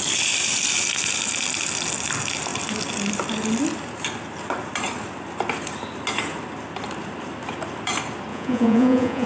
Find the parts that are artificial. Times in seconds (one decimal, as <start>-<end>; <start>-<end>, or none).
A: 8.3-9.3